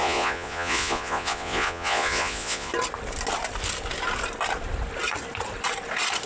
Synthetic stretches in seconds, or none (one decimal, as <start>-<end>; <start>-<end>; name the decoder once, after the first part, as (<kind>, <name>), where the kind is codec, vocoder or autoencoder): 0.0-2.7 (vocoder, Vocos)